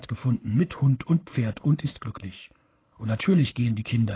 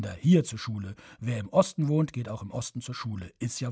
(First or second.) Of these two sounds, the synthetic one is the first